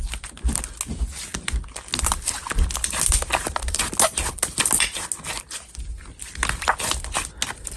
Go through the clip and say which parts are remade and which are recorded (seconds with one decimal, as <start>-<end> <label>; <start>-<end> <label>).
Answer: 0.0-7.8 recorded